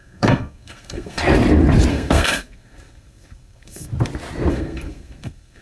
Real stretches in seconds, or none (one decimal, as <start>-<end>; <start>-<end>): 1.2-1.9; 3.9-4.5